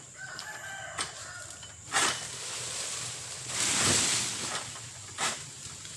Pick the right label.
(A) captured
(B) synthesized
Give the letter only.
A